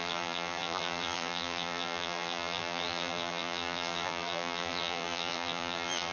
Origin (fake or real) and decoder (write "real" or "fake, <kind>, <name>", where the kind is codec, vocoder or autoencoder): fake, vocoder, BigVGAN v2